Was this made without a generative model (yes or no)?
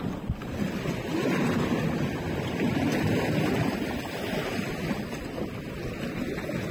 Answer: yes